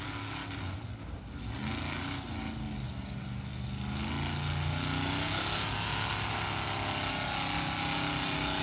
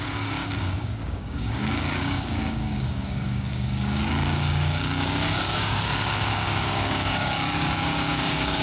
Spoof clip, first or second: second